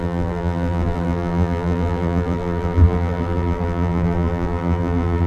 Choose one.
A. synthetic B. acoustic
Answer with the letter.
A